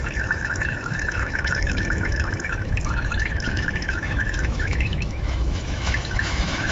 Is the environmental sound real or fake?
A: fake